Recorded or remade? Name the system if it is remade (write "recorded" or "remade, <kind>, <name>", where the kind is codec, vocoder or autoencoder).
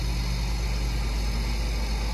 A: recorded